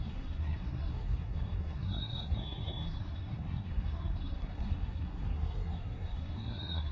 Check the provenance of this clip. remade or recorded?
remade